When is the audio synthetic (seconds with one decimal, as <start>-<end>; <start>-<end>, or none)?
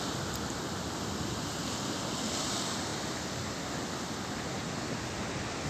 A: none